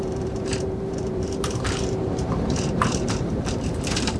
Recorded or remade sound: remade